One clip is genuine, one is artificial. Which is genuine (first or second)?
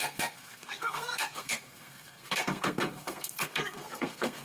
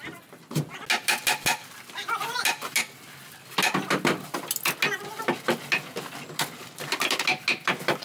second